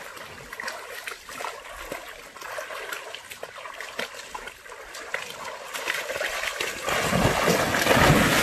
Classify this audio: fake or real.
real